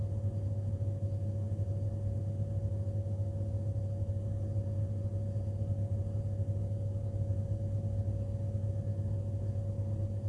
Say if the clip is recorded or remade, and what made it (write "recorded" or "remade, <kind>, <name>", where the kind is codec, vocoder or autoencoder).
recorded